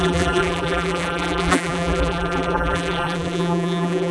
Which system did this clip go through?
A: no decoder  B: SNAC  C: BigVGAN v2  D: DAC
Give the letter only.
C